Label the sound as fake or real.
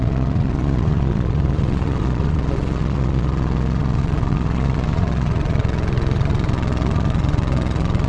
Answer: fake